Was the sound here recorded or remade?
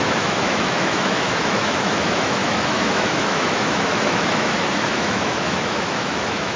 remade